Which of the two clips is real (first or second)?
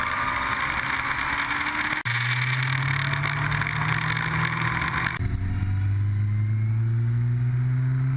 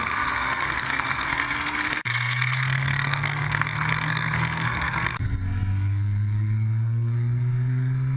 first